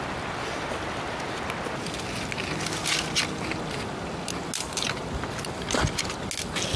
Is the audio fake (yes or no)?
no